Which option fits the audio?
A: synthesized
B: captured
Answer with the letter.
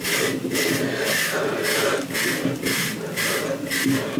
B